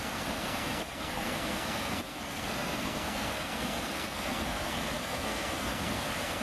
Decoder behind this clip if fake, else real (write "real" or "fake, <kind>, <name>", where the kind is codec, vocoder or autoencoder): fake, codec, SNAC